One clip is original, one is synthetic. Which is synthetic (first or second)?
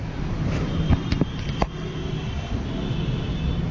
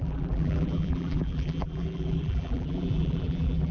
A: second